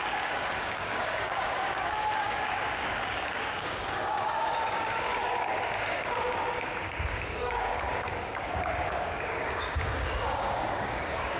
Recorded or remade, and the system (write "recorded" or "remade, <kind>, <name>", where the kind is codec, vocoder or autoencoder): remade, codec, DAC